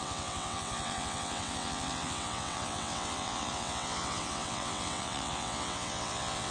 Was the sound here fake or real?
fake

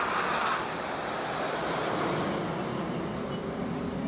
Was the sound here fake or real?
real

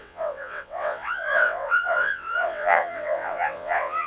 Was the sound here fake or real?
fake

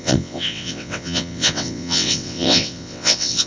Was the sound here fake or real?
fake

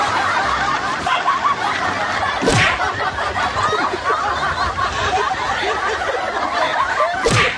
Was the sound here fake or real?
real